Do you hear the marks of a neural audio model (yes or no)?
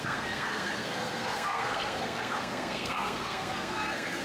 yes